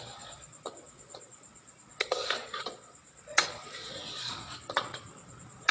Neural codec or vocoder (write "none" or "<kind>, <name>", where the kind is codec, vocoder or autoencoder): vocoder, Vocos